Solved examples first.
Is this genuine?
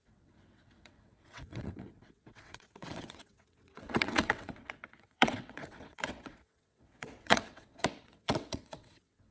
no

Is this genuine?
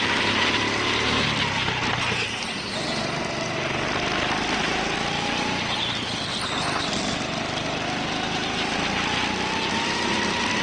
yes